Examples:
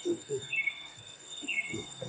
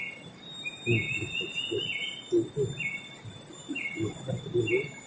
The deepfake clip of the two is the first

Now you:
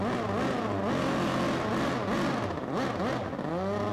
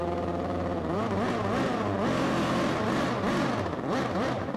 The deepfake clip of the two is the second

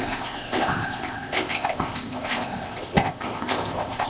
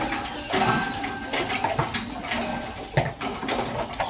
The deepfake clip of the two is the first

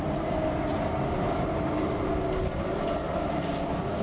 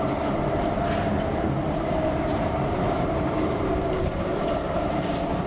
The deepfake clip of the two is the second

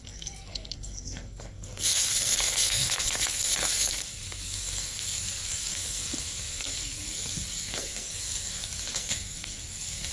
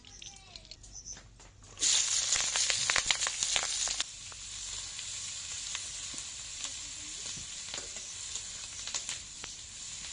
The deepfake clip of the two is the first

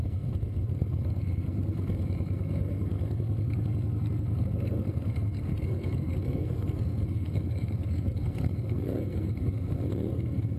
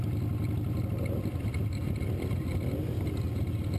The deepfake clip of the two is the first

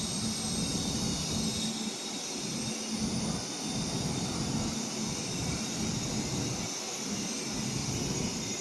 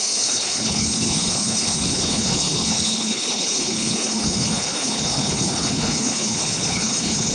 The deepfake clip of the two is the second